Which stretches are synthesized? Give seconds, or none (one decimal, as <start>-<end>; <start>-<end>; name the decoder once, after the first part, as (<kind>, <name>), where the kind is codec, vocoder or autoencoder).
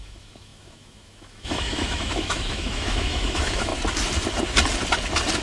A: 0.0-3.7 (autoencoder, DAC-VAE)